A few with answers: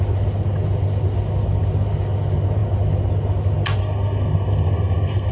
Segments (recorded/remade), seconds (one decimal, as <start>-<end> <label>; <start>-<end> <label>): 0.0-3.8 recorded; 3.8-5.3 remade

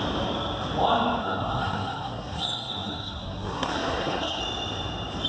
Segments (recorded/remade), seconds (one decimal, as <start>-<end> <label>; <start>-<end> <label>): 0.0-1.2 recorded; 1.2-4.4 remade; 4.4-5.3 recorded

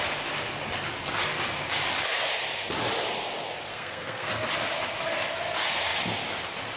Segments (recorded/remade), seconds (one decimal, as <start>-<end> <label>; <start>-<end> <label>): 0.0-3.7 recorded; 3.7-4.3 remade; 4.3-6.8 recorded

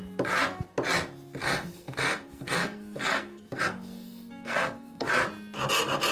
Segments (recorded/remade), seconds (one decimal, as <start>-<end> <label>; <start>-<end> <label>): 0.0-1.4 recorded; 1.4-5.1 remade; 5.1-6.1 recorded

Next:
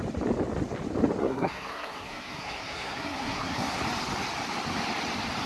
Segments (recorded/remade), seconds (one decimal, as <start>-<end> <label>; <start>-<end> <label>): 0.0-1.2 recorded; 1.2-3.8 remade; 3.8-5.5 recorded

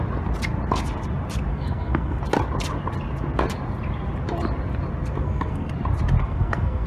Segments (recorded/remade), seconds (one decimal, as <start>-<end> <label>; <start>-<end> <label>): 0.0-1.5 recorded; 1.5-2.2 remade; 2.2-5.2 recorded; 5.2-5.7 remade; 5.7-6.2 recorded; 6.2-6.9 remade